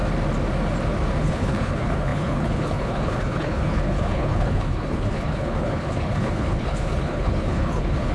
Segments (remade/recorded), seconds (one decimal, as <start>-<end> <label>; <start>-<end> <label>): 0.0-1.2 recorded; 1.2-8.1 remade